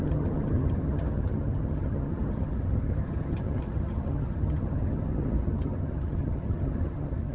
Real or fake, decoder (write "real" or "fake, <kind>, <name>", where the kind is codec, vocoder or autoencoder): fake, vocoder, HiFi-GAN